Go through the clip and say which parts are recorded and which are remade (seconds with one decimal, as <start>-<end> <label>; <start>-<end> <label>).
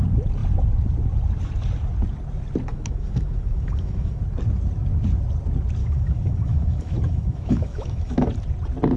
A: 0.0-2.7 recorded; 2.7-4.2 remade; 4.2-5.8 recorded; 5.8-8.3 remade; 8.3-9.0 recorded